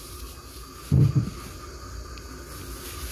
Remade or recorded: recorded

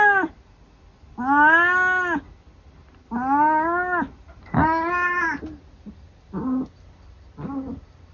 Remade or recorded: recorded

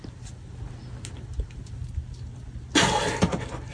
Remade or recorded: recorded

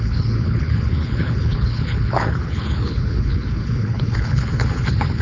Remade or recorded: remade